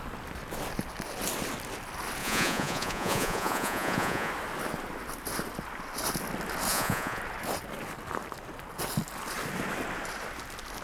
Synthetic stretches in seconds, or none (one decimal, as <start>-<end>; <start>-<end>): 2.2-4.3; 6.7-7.2